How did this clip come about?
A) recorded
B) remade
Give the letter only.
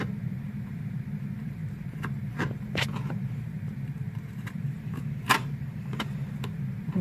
B